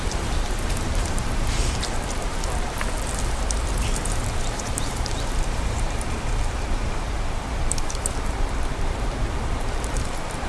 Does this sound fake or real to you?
fake